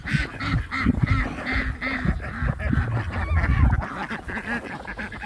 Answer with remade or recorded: recorded